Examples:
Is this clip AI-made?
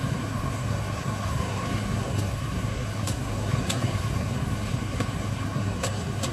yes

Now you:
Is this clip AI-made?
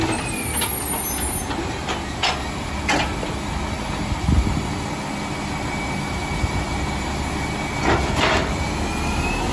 no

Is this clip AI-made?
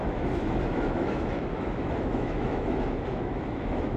yes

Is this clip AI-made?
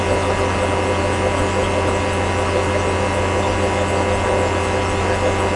no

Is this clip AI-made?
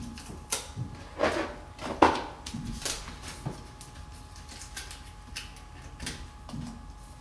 no